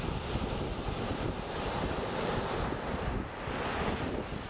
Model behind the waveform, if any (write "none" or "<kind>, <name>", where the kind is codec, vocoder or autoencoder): none